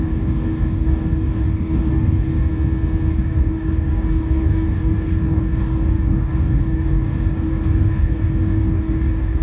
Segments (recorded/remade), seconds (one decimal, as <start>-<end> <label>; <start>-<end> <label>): 0.0-2.5 remade; 2.5-3.1 recorded; 3.1-9.4 remade